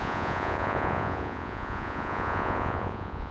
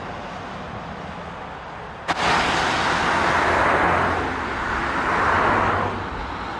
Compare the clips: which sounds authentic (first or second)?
second